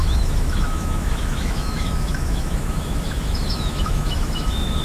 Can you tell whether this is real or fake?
fake